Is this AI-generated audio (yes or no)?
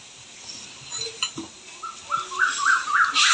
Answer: no